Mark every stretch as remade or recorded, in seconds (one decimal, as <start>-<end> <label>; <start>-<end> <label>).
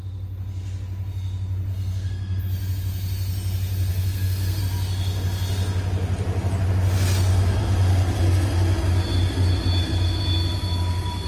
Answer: 0.0-1.7 recorded; 1.7-2.4 remade; 2.4-3.9 recorded; 3.9-4.6 remade; 4.6-11.3 recorded